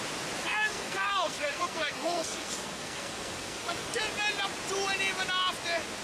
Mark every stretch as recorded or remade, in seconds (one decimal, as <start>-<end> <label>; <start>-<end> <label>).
0.0-0.4 recorded; 0.4-4.0 remade; 4.0-6.0 recorded